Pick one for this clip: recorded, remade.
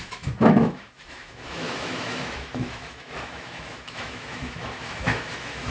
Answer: remade